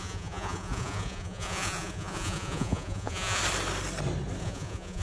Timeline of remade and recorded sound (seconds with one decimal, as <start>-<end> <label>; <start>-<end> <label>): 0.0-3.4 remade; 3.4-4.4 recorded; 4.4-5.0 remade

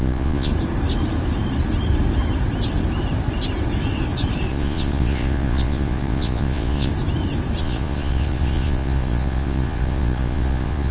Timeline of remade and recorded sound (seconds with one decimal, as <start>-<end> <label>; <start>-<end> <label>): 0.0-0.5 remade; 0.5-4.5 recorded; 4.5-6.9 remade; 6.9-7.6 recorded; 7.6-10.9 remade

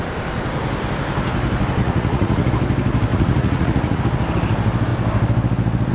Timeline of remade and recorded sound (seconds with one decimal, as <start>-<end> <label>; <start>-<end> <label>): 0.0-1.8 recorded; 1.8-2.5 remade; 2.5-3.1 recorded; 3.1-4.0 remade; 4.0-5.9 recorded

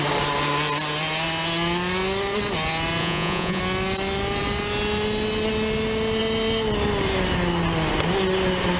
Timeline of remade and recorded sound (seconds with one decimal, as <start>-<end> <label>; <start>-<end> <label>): 0.0-3.0 recorded; 3.0-3.6 remade; 3.6-8.8 recorded

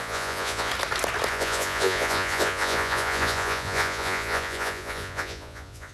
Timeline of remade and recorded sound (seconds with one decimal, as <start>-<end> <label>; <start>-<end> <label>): 0.0-0.7 remade; 0.7-1.3 recorded; 1.3-5.9 remade

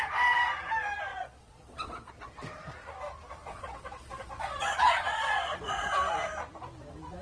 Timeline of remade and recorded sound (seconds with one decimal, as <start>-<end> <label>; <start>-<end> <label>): 0.0-1.1 recorded; 1.1-2.1 remade; 2.1-3.4 recorded; 3.4-5.9 remade; 5.9-7.2 recorded